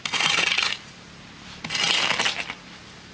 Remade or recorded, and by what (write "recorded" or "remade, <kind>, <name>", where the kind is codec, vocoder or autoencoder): recorded